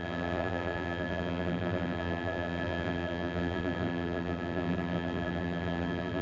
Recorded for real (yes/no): no